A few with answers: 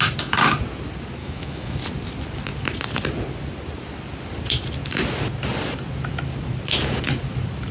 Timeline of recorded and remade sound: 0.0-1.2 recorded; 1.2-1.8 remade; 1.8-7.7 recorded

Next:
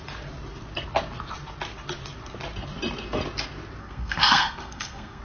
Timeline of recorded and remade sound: 0.0-3.8 recorded; 3.8-5.2 remade

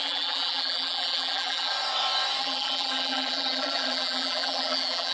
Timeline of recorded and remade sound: 0.0-1.7 remade; 1.7-2.4 recorded; 2.4-5.1 remade